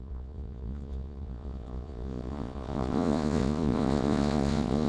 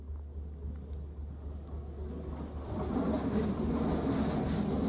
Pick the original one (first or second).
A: second